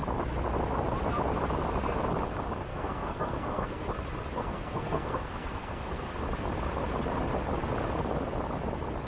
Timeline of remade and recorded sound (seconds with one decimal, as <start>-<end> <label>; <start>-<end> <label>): 0.0-2.7 recorded; 2.7-3.9 remade; 3.9-4.4 recorded; 4.4-6.1 remade; 6.1-9.1 recorded